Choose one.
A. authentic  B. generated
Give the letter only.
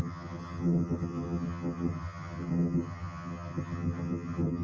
B